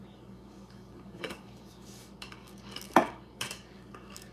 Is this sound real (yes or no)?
no